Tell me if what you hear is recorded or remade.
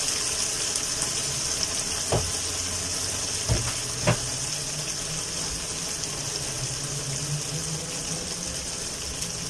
recorded